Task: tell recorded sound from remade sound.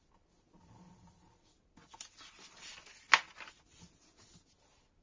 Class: recorded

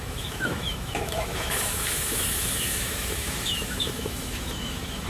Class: remade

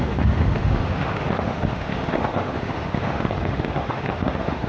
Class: remade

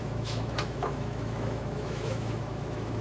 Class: remade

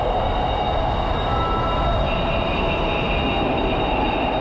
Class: recorded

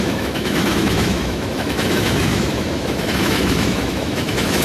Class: remade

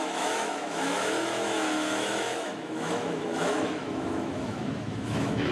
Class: remade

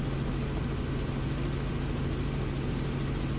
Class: recorded